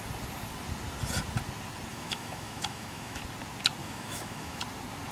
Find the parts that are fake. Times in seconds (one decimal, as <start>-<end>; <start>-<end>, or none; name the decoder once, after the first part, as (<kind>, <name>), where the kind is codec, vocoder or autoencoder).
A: 1.9-3.2 (autoencoder, DAC-VAE); 3.8-4.6